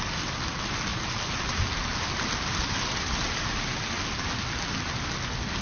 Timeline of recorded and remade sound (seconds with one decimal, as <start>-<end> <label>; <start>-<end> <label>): 0.0-5.6 recorded